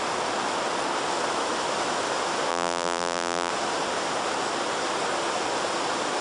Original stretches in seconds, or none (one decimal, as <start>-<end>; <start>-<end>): 0.0-2.5; 3.5-6.2